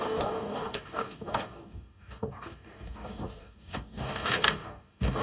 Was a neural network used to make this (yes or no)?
yes